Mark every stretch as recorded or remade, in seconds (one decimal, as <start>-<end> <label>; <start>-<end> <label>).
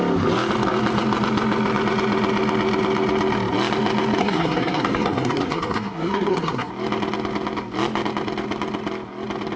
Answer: 0.0-4.2 recorded; 4.2-6.7 remade; 6.7-9.6 recorded